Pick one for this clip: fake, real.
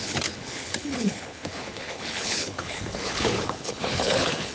fake